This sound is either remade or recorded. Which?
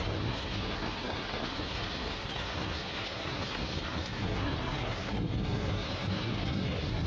remade